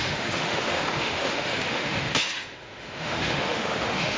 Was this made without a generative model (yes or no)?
no